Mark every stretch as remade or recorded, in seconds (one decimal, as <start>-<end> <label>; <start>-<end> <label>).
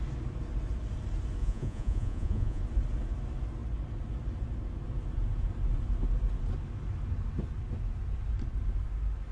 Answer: 0.0-1.4 recorded; 1.4-2.6 remade; 2.6-9.3 recorded